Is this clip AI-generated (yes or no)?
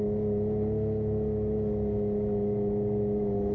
no